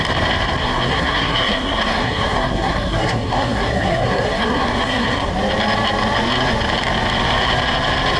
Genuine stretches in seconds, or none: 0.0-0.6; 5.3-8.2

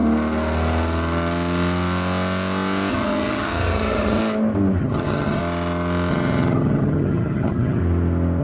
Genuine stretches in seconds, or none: 0.0-2.9; 4.2-4.8; 5.4-6.1; 7.8-8.4

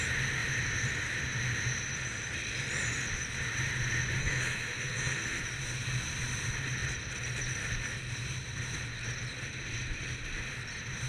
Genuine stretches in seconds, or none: 0.0-4.2; 5.4-11.1

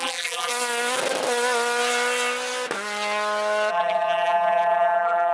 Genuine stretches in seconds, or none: 0.5-3.7

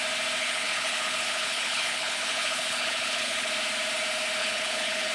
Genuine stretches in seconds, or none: 0.0-0.4; 3.5-4.4